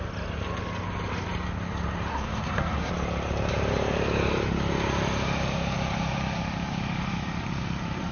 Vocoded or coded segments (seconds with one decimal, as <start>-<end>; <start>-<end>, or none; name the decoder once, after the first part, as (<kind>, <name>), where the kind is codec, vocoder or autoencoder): 2.1-2.9 (codec, SNAC)